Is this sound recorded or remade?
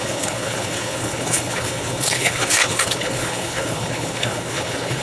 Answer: remade